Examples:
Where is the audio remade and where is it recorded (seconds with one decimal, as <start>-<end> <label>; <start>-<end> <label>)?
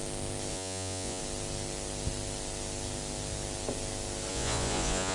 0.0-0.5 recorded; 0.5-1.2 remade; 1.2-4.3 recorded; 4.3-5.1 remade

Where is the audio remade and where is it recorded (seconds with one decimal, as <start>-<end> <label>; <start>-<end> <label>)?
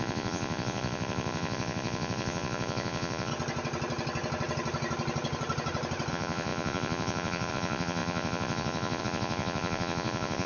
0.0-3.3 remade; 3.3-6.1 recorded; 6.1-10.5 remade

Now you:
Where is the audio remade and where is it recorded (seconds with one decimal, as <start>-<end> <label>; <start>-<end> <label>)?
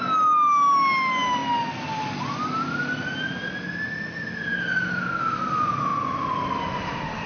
0.0-7.3 recorded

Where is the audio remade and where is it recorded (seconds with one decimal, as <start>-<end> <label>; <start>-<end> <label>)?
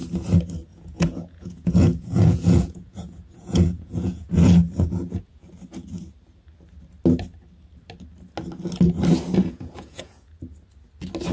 0.0-0.7 recorded; 0.7-5.5 remade; 5.5-9.4 recorded; 9.4-10.4 remade; 10.4-11.3 recorded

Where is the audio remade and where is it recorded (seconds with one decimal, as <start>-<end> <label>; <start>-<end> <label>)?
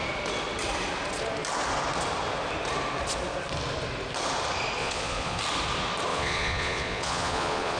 0.0-4.8 recorded; 4.8-5.4 remade; 5.4-6.1 recorded; 6.1-7.8 remade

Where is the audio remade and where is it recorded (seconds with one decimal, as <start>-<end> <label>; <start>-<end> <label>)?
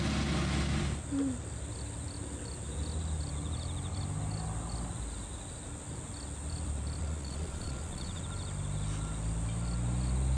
0.0-7.0 recorded; 7.0-8.2 remade; 8.2-10.4 recorded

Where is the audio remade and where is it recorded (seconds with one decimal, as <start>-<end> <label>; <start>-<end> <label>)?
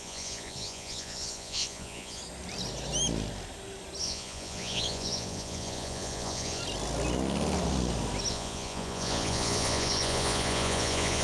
0.0-2.2 remade; 2.2-4.0 recorded; 4.0-6.6 remade; 6.6-8.3 recorded; 8.3-11.2 remade